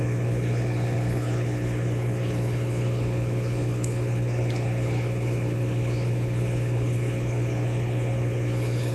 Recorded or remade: remade